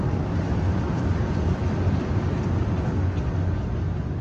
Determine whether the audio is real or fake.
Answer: real